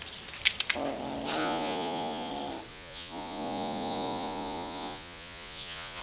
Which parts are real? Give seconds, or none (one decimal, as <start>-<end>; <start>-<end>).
0.0-1.4; 2.3-2.7